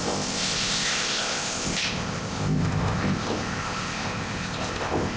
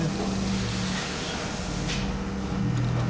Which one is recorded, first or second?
second